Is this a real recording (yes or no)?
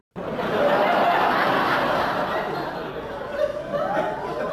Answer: yes